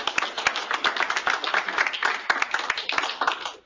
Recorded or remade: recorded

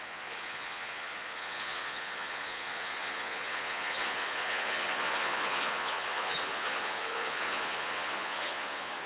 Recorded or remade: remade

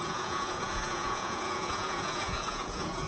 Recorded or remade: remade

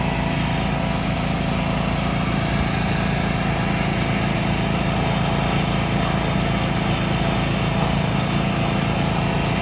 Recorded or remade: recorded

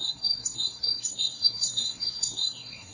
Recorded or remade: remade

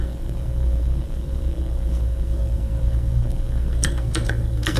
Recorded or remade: remade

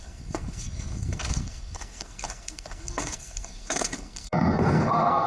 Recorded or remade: remade